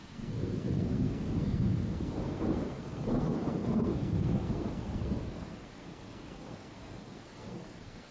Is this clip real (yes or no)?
no